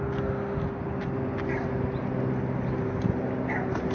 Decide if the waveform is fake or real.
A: real